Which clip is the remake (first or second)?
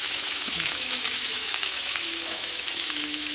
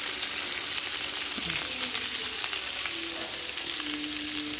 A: first